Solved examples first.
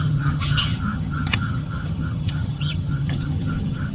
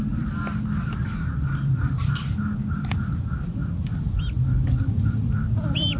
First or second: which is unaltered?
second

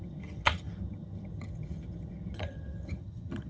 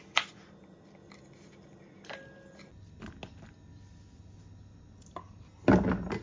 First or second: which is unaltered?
second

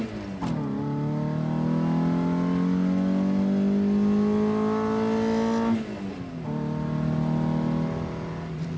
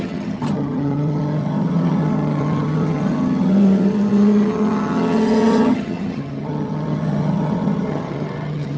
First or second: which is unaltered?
first